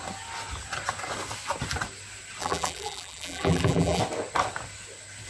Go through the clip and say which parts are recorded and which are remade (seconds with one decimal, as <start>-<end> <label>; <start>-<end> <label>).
0.0-2.4 recorded; 2.4-4.0 remade; 4.0-5.3 recorded